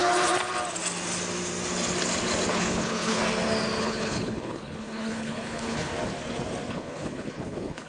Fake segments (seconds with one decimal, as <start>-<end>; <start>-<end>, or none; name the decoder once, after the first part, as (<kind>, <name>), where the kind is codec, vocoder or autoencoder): 2.5-3.2 (codec, HILCodec); 3.8-5.9; 6.7-7.9